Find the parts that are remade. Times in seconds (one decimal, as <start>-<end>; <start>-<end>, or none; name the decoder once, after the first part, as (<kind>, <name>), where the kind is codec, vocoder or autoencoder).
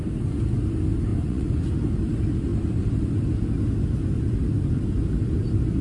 1.1-1.6 (vocoder, Vocos)